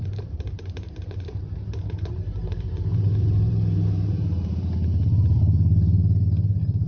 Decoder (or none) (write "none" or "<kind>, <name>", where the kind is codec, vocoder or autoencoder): vocoder, BigVGAN v2